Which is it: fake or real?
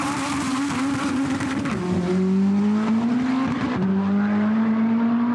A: real